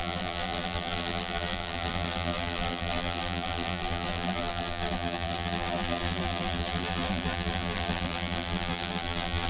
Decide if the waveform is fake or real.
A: fake